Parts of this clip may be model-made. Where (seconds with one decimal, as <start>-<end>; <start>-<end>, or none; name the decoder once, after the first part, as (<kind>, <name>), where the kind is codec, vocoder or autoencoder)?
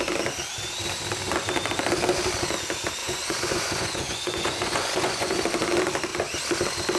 3.0-5.4 (vocoder, Vocos)